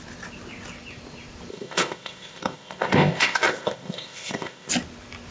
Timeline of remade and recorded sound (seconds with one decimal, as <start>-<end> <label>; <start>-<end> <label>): 0.0-1.5 recorded; 1.5-4.7 remade; 4.7-5.3 recorded